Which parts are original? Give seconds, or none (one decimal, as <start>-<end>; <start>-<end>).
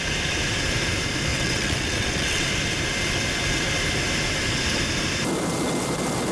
0.0-1.3; 2.5-6.3